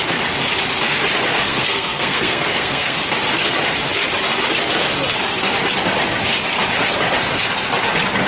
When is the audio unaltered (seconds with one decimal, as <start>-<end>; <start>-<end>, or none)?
0.0-1.5; 3.0-8.3